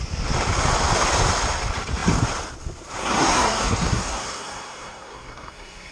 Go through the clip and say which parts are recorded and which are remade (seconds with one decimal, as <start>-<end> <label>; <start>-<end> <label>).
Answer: 0.0-3.0 recorded; 3.0-5.9 remade